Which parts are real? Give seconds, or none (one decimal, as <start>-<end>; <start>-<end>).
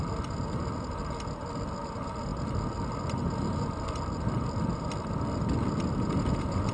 0.0-6.7